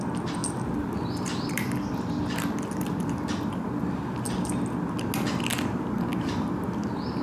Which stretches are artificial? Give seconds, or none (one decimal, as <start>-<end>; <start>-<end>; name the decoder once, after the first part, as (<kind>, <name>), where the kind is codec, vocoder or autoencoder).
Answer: 0.4-4.7 (vocoder, BigVGAN v2); 6.1-6.6